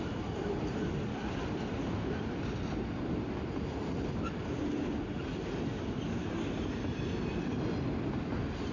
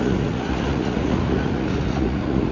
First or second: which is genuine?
first